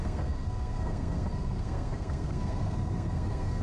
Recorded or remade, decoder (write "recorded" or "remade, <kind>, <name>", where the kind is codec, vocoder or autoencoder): remade, codec, SNAC